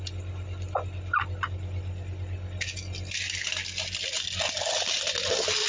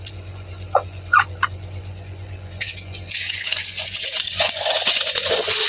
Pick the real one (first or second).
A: first